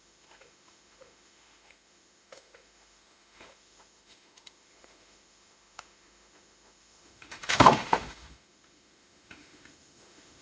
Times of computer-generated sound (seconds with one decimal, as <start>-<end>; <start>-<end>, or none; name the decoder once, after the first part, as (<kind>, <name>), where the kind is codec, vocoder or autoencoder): 0.0-10.4 (autoencoder, DAC-VAE)